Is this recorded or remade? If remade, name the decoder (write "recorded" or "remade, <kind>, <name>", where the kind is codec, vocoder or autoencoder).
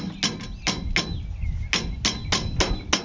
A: recorded